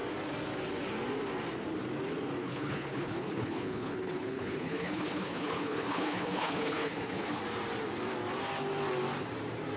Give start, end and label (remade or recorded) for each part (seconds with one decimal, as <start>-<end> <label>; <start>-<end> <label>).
0.0-2.4 recorded; 2.4-7.4 remade; 7.4-9.8 recorded